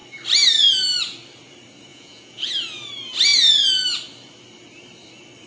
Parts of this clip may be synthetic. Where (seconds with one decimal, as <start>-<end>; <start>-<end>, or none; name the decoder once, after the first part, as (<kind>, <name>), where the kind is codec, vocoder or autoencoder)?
1.9-2.5 (vocoder, Vocos)